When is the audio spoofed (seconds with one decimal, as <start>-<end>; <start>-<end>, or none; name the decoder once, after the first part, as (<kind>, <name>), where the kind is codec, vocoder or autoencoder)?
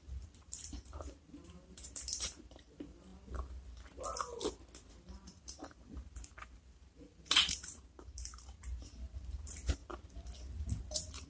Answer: 0.0-3.1 (vocoder, BigVGAN v2); 4.9-9.8; 10.8-11.3